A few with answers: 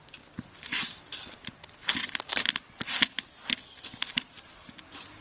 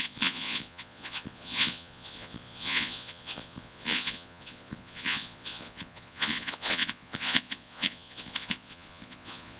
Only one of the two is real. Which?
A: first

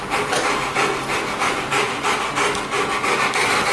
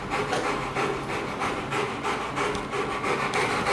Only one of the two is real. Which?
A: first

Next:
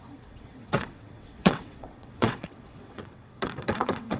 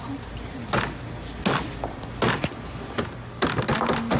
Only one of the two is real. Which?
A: second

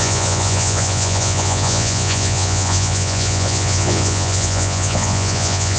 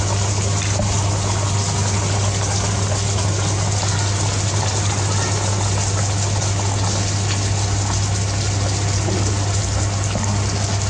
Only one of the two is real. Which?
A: second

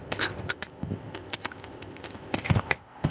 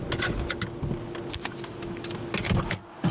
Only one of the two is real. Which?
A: second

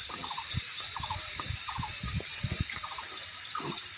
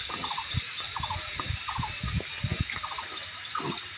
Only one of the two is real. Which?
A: second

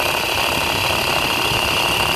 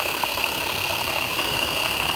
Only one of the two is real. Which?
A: first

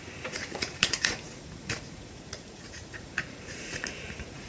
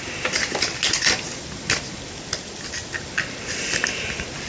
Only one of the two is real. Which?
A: second